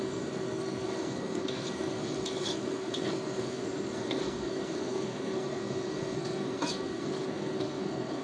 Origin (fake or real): fake